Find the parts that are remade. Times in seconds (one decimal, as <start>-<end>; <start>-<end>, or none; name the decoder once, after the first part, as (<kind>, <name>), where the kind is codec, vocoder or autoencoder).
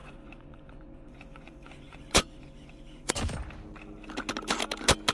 0.0-3.1 (vocoder, Vocos)